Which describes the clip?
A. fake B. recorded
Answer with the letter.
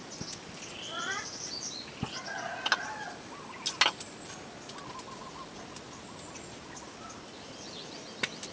B